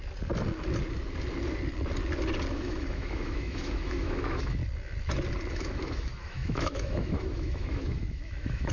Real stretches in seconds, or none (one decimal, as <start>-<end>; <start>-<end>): 0.0-2.5; 4.6-5.5